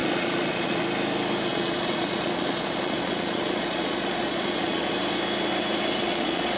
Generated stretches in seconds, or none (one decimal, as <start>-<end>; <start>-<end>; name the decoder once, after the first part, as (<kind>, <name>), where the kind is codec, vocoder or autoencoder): 0.0-0.8 (vocoder, Vocos); 1.5-4.9; 6.0-6.6